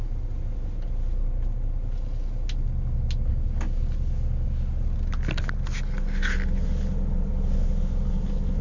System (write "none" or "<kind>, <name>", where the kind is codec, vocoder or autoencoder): none